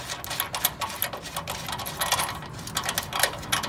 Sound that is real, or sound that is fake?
real